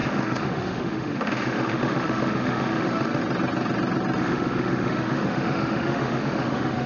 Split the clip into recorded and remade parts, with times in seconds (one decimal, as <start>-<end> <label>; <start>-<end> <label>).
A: 0.0-3.2 remade; 3.2-4.2 recorded; 4.2-6.9 remade

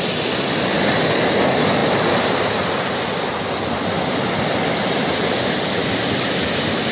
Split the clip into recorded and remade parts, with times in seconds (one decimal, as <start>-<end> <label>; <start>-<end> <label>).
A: 0.0-6.9 recorded

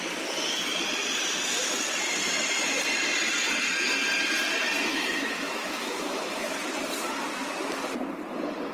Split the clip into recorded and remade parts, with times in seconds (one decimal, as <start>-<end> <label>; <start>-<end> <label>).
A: 0.0-4.9 recorded; 4.9-6.5 remade; 6.5-8.7 recorded